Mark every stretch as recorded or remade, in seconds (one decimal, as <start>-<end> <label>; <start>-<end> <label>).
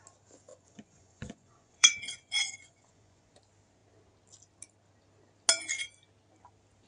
0.0-0.5 recorded; 0.5-3.3 remade; 3.3-6.9 recorded